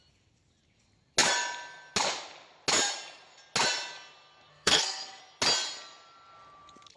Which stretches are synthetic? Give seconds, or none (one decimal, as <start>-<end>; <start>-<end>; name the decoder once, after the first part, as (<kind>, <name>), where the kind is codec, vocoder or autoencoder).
4.5-5.2 (codec, SNAC)